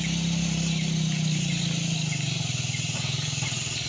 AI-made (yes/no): no